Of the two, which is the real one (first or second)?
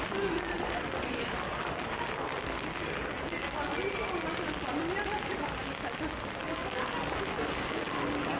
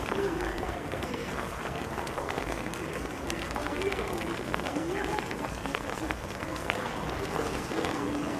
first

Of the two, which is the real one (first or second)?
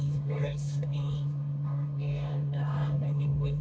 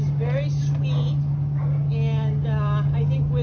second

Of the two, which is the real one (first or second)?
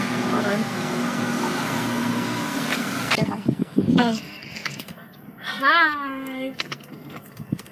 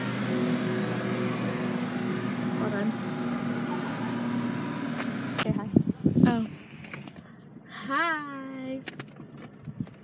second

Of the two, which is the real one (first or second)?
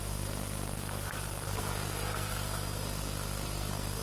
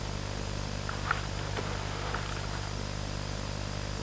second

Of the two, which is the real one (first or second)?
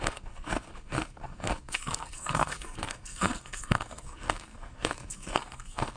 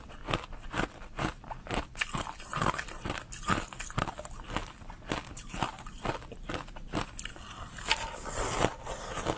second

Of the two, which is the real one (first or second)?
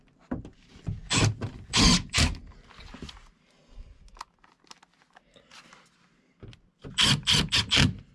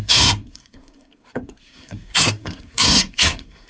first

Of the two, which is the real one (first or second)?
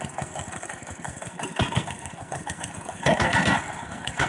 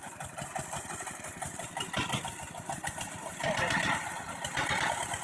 second